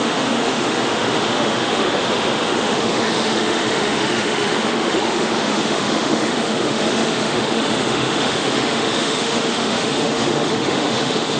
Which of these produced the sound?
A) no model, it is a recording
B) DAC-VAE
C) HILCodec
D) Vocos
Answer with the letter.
B